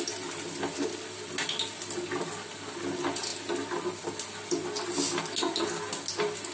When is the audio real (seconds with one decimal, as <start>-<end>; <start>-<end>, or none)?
0.0-6.5